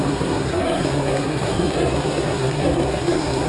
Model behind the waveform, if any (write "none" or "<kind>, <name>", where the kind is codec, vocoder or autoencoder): codec, SNAC